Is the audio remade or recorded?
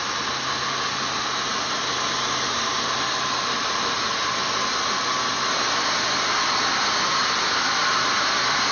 recorded